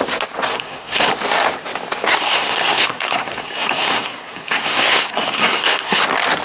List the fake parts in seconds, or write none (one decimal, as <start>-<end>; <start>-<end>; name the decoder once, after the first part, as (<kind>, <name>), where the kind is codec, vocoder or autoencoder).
0.5-1.1 (codec, SNAC); 2.2-6.0